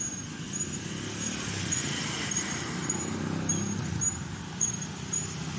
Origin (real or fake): real